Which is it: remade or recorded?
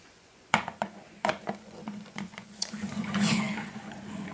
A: remade